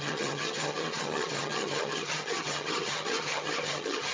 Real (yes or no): no